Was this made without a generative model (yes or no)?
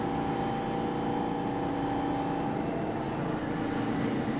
yes